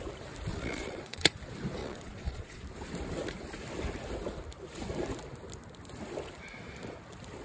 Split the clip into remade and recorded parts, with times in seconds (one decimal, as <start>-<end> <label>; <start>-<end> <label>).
0.0-0.5 recorded; 0.5-1.4 remade; 1.4-1.8 recorded; 1.8-2.6 remade; 2.6-7.4 recorded